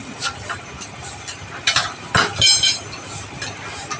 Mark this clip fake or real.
real